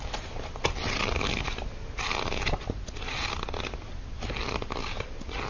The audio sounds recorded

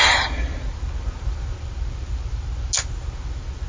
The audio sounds recorded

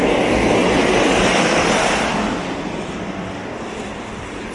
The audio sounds recorded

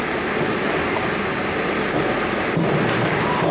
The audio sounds recorded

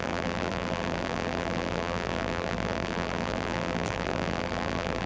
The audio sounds remade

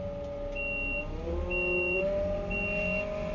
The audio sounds recorded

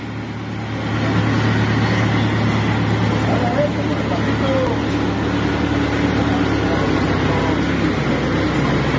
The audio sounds recorded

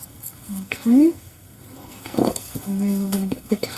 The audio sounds remade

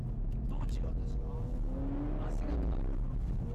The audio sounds recorded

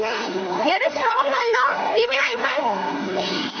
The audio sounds remade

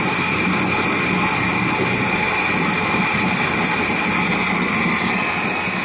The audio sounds recorded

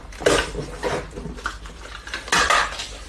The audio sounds recorded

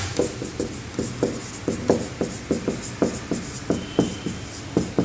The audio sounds recorded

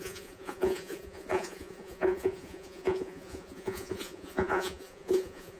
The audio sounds remade